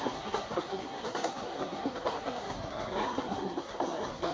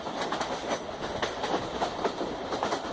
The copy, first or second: first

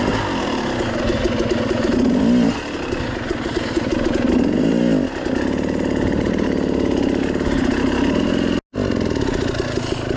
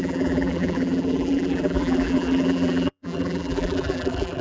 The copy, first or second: second